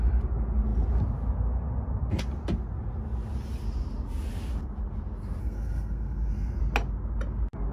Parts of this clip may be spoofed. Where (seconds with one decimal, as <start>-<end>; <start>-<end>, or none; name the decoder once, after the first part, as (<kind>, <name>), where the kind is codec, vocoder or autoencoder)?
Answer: 5.4-6.6 (codec, SNAC)